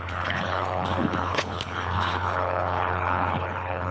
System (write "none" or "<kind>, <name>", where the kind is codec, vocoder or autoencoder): codec, HILCodec